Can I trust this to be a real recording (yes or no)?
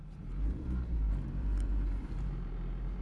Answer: no